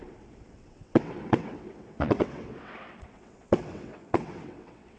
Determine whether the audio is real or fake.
fake